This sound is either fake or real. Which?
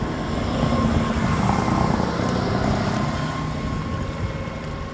real